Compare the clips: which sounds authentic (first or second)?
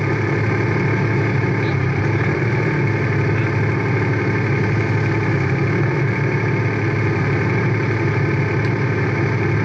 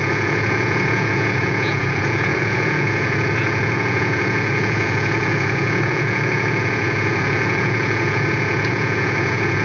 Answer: first